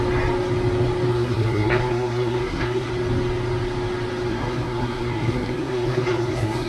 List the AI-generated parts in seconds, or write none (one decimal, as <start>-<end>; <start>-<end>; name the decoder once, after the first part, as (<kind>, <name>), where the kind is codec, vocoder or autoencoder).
1.1-2.9 (codec, SNAC); 4.3-6.7